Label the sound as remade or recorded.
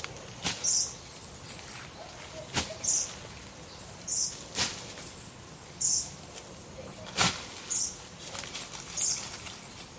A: recorded